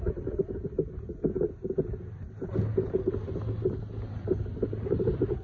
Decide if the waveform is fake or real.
real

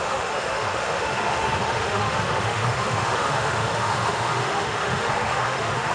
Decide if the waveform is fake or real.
fake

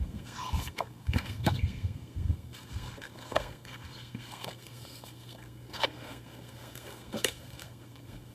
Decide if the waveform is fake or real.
fake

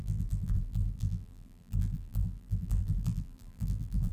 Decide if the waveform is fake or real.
fake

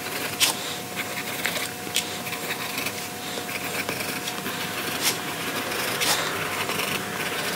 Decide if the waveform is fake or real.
fake